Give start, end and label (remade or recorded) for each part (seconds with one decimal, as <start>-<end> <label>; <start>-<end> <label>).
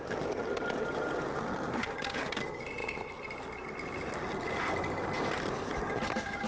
0.0-6.5 recorded